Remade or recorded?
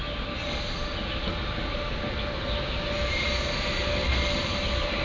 recorded